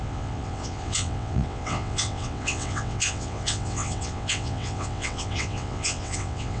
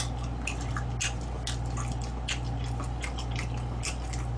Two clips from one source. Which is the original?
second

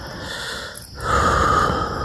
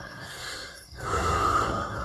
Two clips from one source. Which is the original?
first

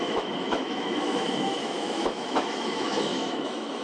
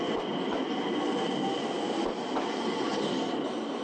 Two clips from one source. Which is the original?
second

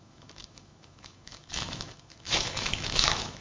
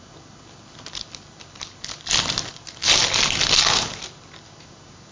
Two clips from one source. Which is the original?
second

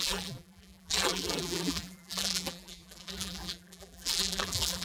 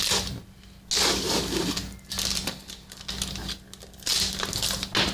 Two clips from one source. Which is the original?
second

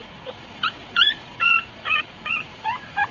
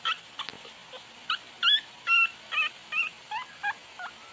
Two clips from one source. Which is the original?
second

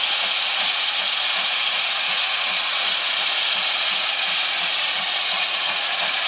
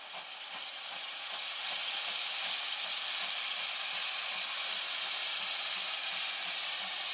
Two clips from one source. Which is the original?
second